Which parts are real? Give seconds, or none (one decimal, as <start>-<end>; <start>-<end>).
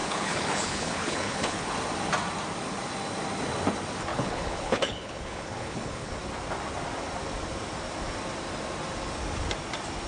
1.7-4.1; 6.1-10.1